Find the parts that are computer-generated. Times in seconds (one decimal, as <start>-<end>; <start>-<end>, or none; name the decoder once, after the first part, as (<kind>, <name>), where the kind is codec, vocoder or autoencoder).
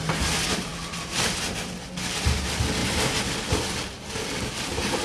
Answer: 2.8-4.1 (vocoder, BigVGAN v2)